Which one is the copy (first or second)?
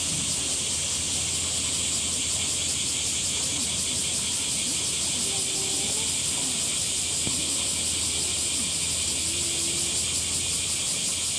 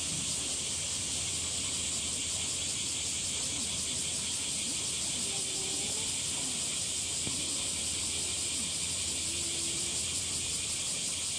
second